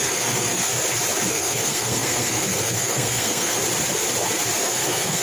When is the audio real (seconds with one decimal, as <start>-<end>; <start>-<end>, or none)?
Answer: 0.7-1.3; 3.6-4.6